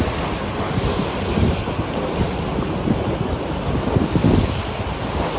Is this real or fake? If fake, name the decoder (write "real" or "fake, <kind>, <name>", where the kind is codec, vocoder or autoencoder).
real